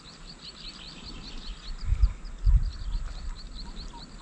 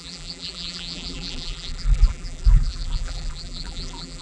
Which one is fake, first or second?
second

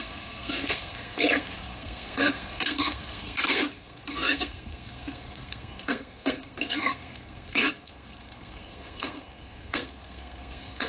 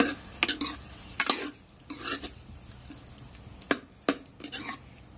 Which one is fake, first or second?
first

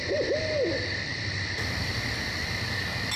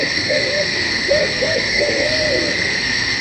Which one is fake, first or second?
second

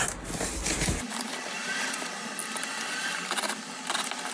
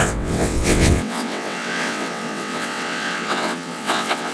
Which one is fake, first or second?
second